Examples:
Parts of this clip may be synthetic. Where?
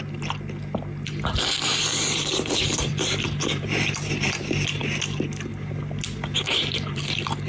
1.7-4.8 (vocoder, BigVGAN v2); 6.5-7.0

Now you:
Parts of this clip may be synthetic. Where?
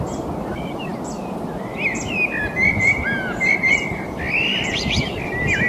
none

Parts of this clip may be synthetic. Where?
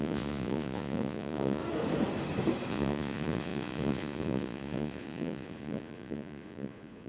0.0-1.6 (vocoder, Vocos); 2.7-7.1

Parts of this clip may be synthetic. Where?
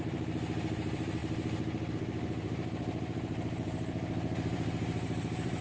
0.0-1.2 (vocoder, BigVGAN v2); 1.9-5.6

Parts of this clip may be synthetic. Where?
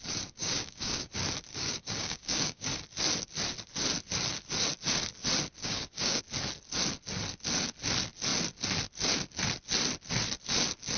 0.4-1.1 (codec, DAC); 1.5-2.7; 5.6-6.2